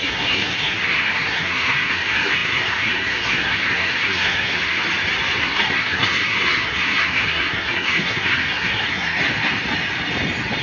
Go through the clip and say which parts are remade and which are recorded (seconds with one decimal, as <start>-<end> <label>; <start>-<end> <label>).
0.0-4.8 remade; 4.8-5.4 recorded; 5.4-9.2 remade; 9.2-10.6 recorded